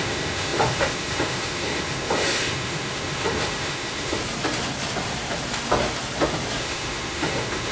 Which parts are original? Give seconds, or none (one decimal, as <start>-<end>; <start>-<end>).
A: 4.2-6.6